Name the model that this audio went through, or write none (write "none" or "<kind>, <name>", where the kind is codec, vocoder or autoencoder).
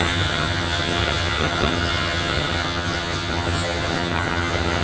vocoder, HiFi-GAN